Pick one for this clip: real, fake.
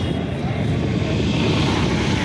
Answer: real